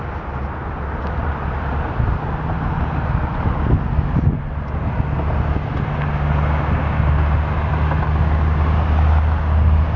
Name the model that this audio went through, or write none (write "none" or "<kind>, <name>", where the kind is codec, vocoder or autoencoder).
none